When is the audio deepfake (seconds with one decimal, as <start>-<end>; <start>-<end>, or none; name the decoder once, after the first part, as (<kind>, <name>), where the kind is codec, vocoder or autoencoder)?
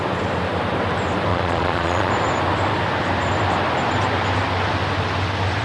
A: 1.3-2.1 (vocoder, Vocos)